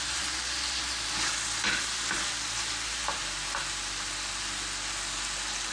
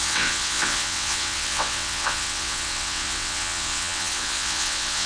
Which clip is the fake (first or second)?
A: second